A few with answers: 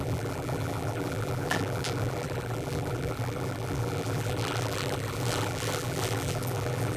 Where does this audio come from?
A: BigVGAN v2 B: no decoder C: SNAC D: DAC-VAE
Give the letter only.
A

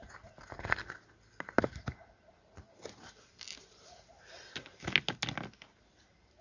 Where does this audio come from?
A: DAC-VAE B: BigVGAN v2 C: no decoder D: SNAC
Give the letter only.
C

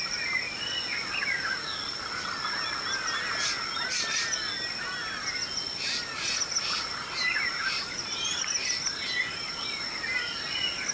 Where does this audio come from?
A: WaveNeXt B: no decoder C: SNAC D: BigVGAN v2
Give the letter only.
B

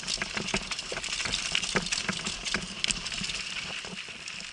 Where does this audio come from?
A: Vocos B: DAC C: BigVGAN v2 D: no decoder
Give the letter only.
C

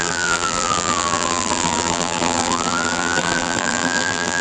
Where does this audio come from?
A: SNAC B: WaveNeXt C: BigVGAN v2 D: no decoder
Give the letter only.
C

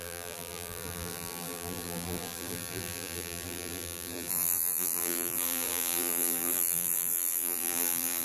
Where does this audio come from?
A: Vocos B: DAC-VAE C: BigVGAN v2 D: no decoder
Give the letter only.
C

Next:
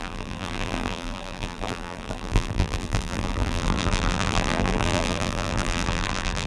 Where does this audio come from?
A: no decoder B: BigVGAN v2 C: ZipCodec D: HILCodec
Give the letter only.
B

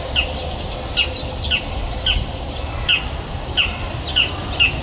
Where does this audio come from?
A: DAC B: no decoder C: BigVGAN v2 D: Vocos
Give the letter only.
B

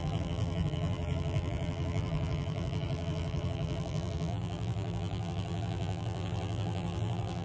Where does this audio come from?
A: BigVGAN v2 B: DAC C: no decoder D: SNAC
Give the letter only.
A